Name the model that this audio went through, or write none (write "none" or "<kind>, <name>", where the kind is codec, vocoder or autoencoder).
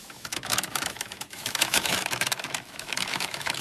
autoencoder, DAC-VAE